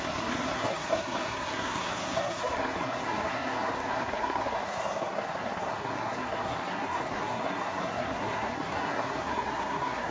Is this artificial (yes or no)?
yes